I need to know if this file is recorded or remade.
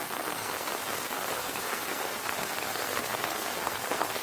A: remade